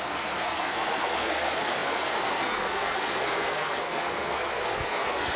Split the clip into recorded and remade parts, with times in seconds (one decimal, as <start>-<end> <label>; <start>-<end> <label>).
0.0-5.4 remade